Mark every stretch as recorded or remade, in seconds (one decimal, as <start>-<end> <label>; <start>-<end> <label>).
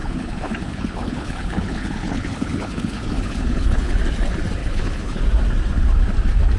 0.0-4.0 remade; 4.0-4.6 recorded; 4.6-5.2 remade; 5.2-6.6 recorded